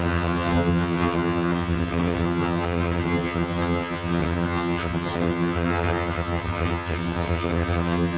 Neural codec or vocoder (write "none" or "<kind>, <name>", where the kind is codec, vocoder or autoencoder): vocoder, HiFi-GAN